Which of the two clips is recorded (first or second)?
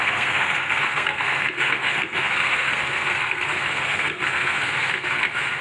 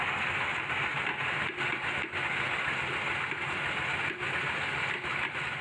second